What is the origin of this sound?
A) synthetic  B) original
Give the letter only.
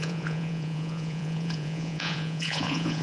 A